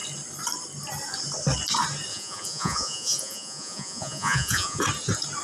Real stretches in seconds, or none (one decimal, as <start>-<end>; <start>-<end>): 0.0-2.1; 4.8-5.4